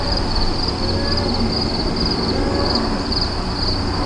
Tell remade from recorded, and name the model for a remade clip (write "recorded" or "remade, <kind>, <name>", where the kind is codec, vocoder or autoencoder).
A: recorded